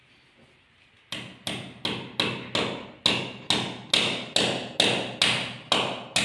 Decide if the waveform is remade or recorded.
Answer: recorded